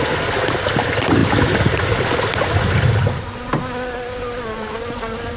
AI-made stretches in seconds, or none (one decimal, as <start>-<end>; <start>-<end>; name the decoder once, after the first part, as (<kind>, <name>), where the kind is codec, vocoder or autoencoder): none